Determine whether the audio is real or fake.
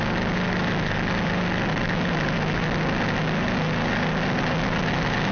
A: real